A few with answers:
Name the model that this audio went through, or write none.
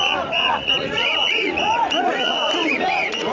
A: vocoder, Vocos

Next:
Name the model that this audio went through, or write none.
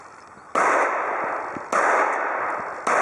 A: none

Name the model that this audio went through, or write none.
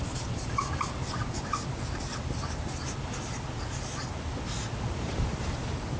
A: none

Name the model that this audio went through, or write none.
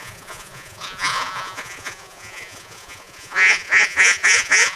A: vocoder, Vocos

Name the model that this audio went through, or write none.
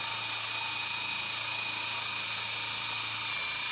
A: none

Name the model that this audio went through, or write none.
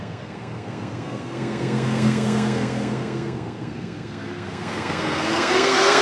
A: codec, SNAC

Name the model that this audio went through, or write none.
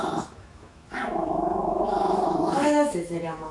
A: autoencoder, DAC-VAE